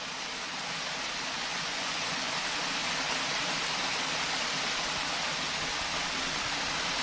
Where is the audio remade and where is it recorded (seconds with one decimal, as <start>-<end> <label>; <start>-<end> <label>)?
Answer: 0.0-1.4 recorded; 1.4-2.3 remade; 2.3-7.0 recorded